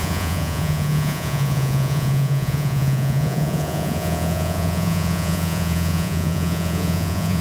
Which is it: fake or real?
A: fake